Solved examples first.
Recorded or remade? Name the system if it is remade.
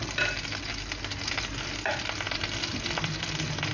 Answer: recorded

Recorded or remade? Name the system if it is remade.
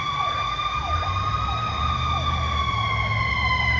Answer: recorded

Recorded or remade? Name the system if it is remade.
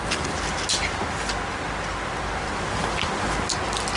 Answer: recorded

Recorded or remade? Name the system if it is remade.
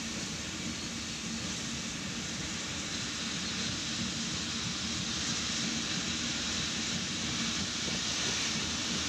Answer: recorded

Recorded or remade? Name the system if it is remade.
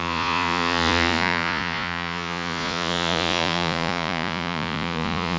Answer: remade, vocoder, Vocos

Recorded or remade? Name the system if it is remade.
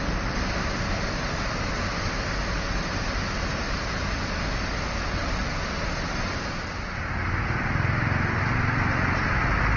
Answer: recorded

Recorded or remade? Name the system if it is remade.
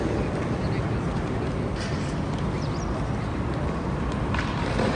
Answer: recorded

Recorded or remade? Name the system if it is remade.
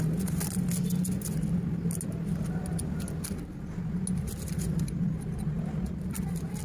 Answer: recorded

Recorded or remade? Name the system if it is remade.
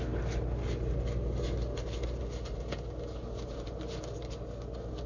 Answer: recorded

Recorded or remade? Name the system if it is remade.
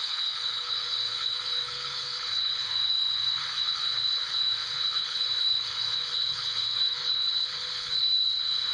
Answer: remade, codec, HILCodec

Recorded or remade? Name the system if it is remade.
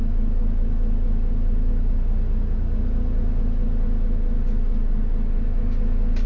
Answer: recorded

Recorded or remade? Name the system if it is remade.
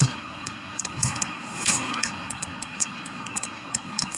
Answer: remade, codec, SNAC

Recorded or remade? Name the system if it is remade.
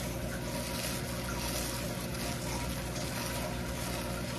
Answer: recorded